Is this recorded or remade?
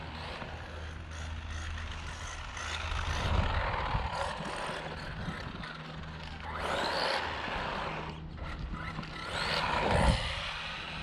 recorded